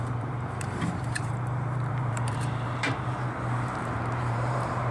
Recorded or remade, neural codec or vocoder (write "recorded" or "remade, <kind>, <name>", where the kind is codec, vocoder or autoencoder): remade, vocoder, BigVGAN v2